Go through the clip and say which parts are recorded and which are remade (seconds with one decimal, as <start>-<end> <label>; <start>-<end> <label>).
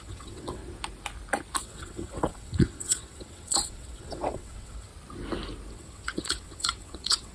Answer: 0.0-0.6 remade; 0.6-1.6 recorded; 1.6-4.9 remade; 4.9-5.7 recorded; 5.7-7.3 remade